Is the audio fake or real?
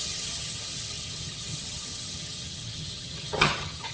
fake